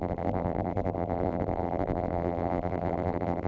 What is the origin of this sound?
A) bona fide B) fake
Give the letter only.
B